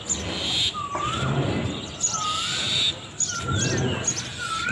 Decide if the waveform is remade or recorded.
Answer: recorded